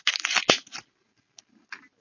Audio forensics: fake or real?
real